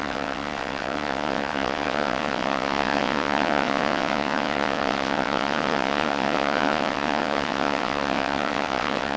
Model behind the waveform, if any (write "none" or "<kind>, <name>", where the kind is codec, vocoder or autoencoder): vocoder, WaveNeXt